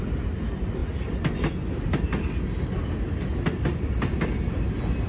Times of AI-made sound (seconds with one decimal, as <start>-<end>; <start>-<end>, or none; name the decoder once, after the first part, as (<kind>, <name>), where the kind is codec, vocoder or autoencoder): 3.3-3.9 (vocoder, BigVGAN v2)